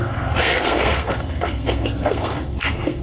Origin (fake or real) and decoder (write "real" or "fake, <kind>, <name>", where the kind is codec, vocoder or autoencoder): fake, codec, SNAC